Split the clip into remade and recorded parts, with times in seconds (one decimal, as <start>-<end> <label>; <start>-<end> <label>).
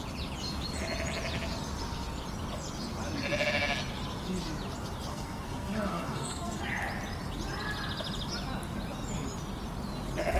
0.0-5.1 recorded; 5.1-6.6 remade; 6.6-10.4 recorded